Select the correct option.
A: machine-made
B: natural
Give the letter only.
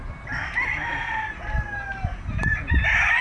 B